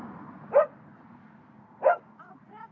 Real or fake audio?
real